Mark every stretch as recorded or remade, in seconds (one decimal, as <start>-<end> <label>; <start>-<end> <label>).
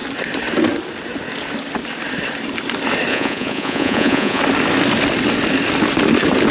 0.0-3.1 recorded; 3.1-4.4 remade; 4.4-6.5 recorded